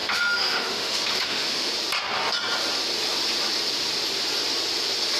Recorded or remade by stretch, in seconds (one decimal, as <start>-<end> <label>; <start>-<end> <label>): 0.0-1.7 remade; 1.7-5.2 recorded